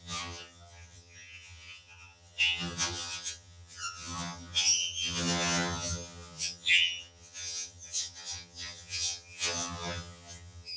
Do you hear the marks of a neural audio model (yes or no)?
yes